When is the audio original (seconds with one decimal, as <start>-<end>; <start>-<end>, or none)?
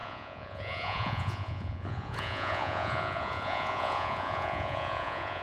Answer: none